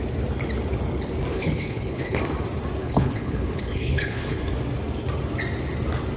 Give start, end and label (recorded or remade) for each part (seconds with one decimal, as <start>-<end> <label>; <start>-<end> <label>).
0.0-1.3 recorded; 1.3-2.2 remade; 2.2-2.8 recorded; 2.8-4.4 remade; 4.4-6.2 recorded